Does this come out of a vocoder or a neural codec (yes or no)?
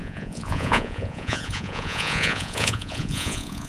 yes